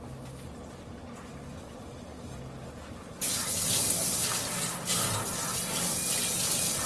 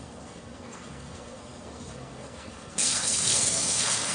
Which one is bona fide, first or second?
first